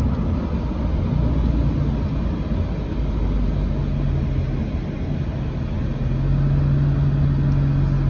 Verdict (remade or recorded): recorded